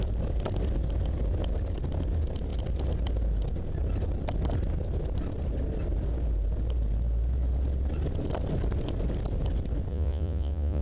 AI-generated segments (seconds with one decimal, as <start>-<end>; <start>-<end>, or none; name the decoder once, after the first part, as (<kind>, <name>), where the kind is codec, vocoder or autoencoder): 9.9-10.8 (vocoder, Vocos)